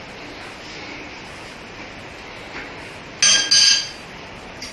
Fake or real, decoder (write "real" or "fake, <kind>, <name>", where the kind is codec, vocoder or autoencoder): real